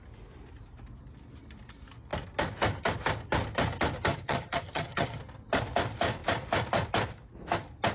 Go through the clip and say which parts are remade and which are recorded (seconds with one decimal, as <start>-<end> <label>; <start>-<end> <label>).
0.0-4.1 recorded; 4.1-5.2 remade; 5.2-7.9 recorded